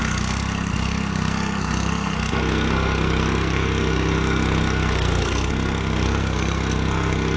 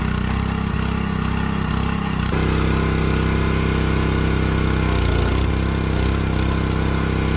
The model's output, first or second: first